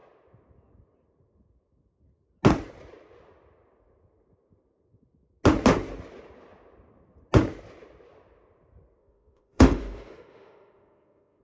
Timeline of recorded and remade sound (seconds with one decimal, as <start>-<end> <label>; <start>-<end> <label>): 0.0-9.0 recorded; 9.0-11.4 remade